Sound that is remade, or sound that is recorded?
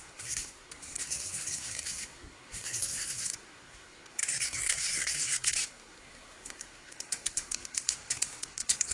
remade